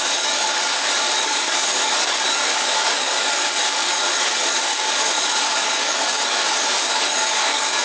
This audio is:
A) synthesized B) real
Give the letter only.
A